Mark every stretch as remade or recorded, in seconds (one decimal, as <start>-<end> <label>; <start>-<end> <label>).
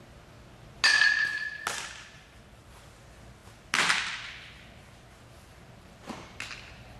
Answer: 0.0-7.0 recorded